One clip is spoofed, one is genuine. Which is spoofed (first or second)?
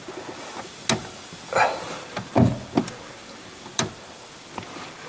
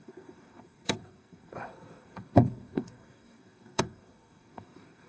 second